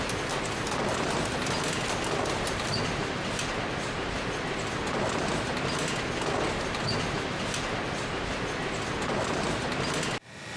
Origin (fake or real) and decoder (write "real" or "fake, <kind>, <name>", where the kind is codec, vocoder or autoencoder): real